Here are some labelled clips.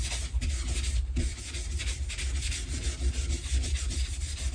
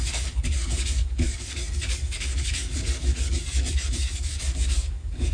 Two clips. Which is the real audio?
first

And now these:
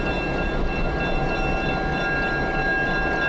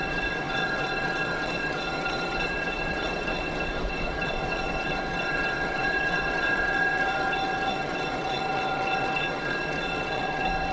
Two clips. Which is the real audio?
first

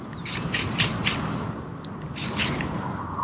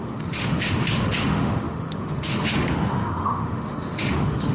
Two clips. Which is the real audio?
first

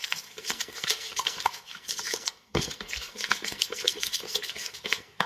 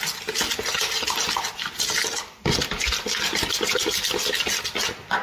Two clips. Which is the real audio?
second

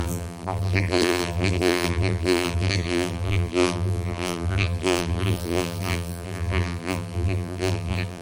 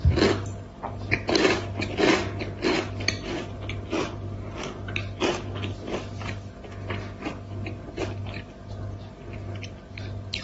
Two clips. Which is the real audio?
second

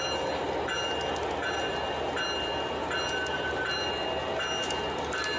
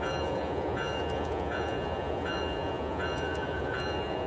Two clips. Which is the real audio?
first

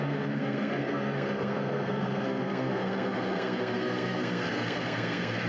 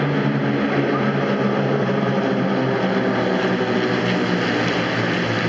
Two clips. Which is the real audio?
second